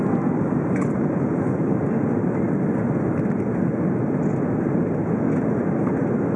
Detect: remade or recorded recorded